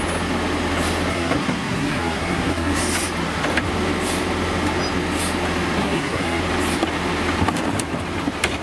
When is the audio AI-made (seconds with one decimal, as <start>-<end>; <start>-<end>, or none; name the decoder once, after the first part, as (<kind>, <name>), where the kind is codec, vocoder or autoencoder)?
1.1-2.8 (codec, SNAC); 5.8-6.4